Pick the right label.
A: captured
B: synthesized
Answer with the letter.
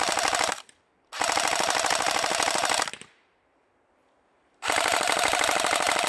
A